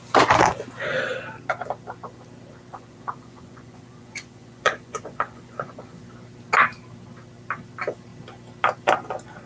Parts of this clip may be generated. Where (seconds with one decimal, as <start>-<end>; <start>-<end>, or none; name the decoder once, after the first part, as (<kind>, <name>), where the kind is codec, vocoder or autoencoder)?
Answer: 2.7-6.0 (vocoder, Vocos)